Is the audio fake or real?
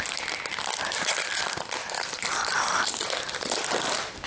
real